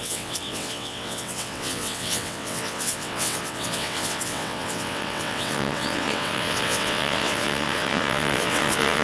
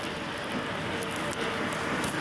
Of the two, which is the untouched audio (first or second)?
second